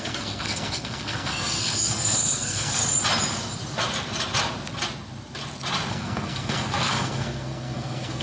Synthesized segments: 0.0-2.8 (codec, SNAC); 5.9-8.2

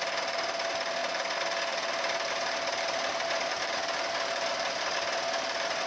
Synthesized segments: none

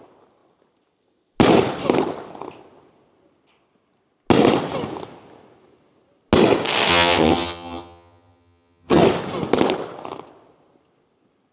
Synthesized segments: 6.9-9.0 (vocoder, HiFi-GAN)